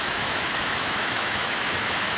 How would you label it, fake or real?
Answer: fake